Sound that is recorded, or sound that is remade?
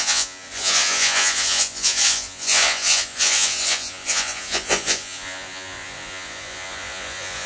remade